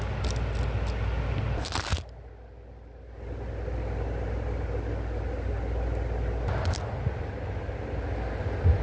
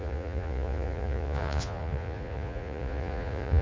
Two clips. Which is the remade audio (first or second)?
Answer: second